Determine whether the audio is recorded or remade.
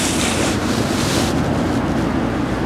recorded